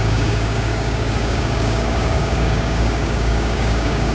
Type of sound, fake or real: fake